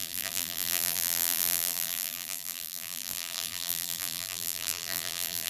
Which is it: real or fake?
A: fake